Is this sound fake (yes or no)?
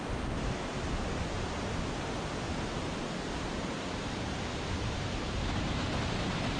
no